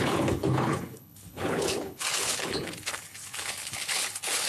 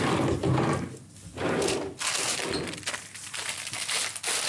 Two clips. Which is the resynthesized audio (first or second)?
first